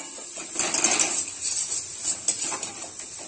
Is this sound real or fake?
real